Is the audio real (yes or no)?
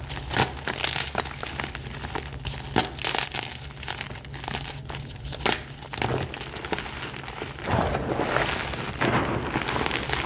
yes